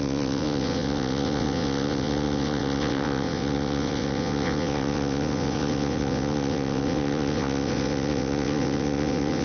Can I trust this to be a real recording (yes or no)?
no